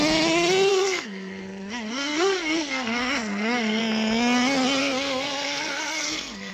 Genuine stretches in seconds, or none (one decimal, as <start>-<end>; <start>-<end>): 0.0-0.7; 3.8-4.8